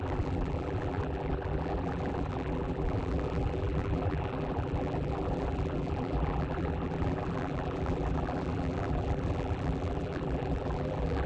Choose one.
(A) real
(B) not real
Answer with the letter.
B